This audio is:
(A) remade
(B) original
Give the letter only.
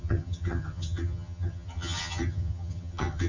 A